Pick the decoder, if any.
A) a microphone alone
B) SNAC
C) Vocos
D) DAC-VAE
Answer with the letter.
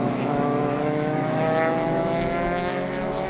D